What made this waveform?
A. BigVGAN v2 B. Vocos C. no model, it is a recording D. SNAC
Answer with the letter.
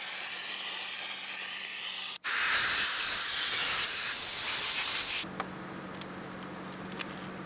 C